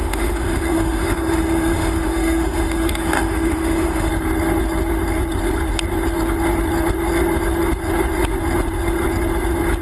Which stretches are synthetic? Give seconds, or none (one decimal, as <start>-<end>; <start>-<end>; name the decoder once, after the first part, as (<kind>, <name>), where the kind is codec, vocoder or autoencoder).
0.0-4.1 (autoencoder, DAC-VAE)